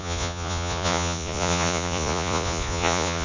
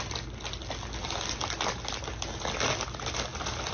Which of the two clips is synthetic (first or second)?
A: first